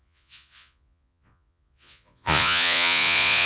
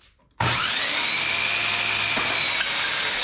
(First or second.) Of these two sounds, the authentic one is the second